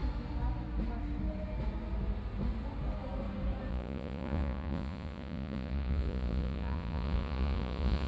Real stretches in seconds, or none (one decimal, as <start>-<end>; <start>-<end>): 0.0-3.7